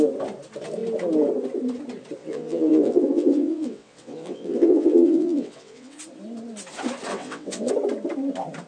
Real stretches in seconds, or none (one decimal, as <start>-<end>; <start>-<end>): 0.0-2.2; 6.0-7.1; 7.7-8.7